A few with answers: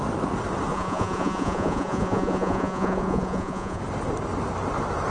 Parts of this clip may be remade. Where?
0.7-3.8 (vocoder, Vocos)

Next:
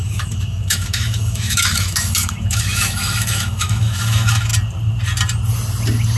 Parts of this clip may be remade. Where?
0.0-4.5 (autoencoder, DAC-VAE)

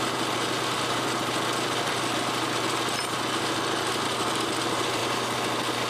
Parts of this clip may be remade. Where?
none

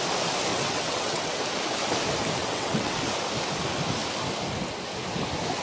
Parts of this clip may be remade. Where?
0.5-1.4 (vocoder, WaveNeXt); 2.4-3.0

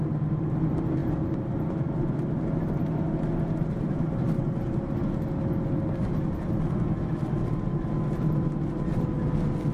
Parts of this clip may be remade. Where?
none